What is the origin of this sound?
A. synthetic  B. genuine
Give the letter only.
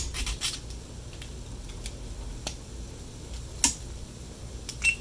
B